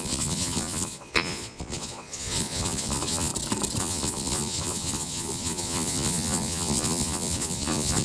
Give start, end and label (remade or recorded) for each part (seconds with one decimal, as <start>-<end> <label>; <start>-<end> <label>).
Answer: 0.0-3.3 remade; 3.3-3.8 recorded; 3.8-8.0 remade